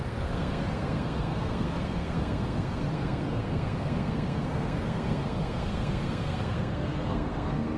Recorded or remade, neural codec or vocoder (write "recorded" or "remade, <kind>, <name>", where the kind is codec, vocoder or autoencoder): remade, codec, SNAC